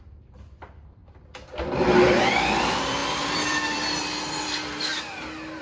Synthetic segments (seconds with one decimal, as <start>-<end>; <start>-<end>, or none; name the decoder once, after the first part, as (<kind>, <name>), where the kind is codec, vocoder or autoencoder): 0.0-1.0 (vocoder, BigVGAN v2); 2.6-4.9